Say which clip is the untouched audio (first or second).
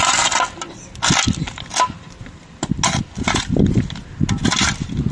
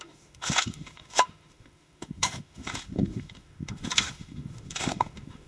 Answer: first